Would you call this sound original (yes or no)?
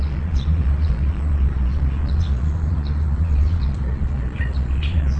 no